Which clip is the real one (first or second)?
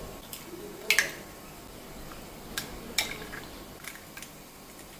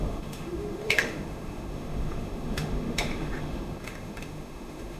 first